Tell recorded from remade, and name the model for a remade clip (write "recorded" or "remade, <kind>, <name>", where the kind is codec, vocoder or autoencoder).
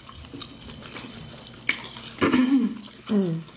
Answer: recorded